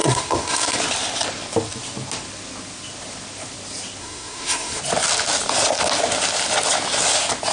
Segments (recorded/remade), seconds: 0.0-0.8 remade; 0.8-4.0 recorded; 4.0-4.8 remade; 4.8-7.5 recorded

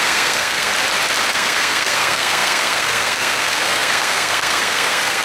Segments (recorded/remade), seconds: 0.0-0.7 remade; 0.7-1.3 recorded; 1.3-5.2 remade

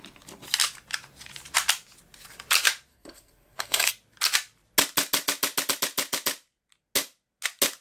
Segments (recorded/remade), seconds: 0.0-2.9 recorded; 2.9-3.9 remade; 3.9-7.8 recorded

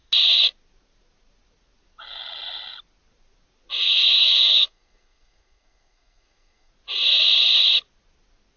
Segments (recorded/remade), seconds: 0.0-3.8 recorded; 3.8-6.7 remade; 6.7-8.6 recorded

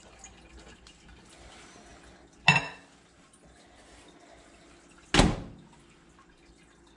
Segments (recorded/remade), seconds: 0.0-7.0 recorded

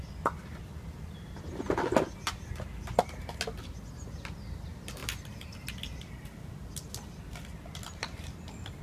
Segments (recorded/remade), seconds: 0.0-8.8 recorded